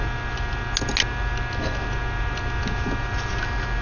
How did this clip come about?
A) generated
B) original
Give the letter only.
B